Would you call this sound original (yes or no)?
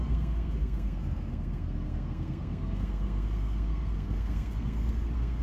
no